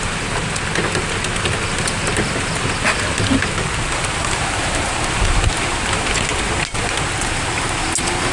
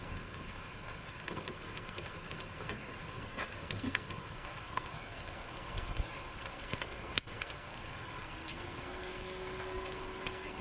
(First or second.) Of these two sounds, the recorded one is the first